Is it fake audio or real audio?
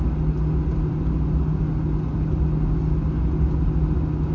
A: real